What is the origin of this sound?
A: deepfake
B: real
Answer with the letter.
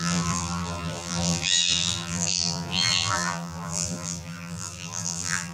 A